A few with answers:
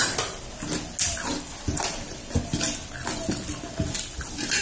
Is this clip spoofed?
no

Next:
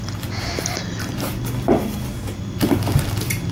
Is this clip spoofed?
no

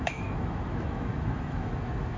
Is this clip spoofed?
yes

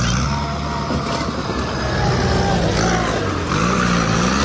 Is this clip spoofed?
no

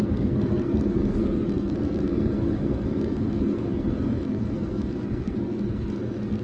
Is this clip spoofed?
yes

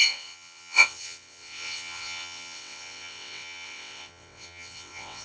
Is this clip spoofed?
yes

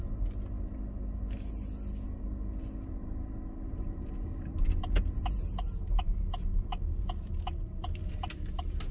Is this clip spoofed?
no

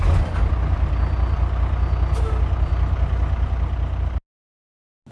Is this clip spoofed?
no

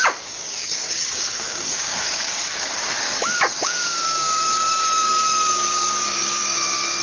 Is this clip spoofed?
yes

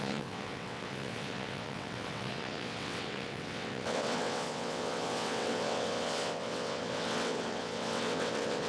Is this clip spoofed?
yes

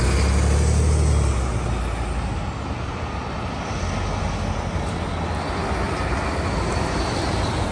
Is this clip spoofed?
no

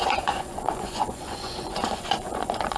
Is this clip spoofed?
yes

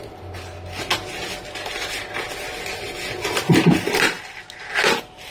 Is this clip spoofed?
no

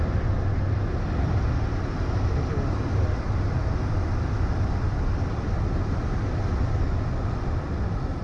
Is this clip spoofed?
no